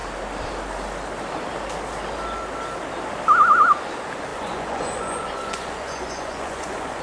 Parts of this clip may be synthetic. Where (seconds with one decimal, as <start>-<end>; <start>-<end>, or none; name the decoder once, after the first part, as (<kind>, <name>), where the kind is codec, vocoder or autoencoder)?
4.3-7.0 (vocoder, Vocos)